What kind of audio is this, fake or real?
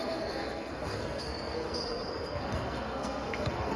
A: fake